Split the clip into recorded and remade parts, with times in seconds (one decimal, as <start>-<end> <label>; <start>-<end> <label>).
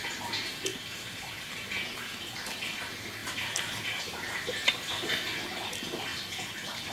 0.0-0.7 recorded; 0.7-1.7 remade; 1.7-3.2 recorded; 3.2-5.1 remade; 5.1-6.9 recorded